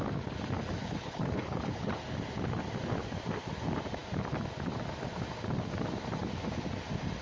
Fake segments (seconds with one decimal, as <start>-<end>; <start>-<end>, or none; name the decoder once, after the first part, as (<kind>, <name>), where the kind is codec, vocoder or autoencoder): 0.8-1.9 (codec, HILCodec)